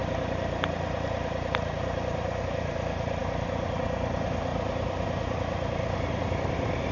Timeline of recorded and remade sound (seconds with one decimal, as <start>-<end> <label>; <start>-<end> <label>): 0.0-2.4 remade; 2.4-4.5 recorded; 4.5-6.2 remade; 6.2-6.9 recorded